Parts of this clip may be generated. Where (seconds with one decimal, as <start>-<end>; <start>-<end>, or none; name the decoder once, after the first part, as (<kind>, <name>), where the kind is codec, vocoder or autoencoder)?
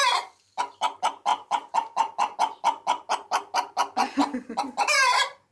none